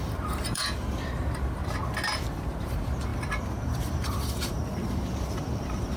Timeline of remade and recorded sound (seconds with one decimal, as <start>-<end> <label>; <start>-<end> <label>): 0.0-1.6 remade; 1.6-2.3 recorded; 2.3-6.0 remade